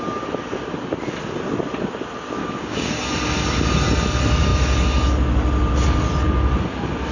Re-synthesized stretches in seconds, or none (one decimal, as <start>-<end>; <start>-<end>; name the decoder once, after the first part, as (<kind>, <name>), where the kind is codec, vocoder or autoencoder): 2.4-2.9 (codec, DAC)